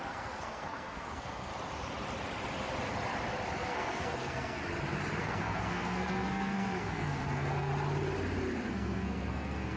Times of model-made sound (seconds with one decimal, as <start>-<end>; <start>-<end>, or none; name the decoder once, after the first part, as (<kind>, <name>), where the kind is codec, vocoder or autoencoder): 0.0-1.5 (codec, SNAC); 3.6-4.6; 5.2-7.7; 8.7-9.8